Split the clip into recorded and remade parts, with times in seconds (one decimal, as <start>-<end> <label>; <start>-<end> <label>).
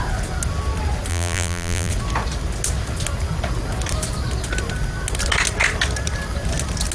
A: 0.0-1.1 recorded; 1.1-1.9 remade; 1.9-6.9 recorded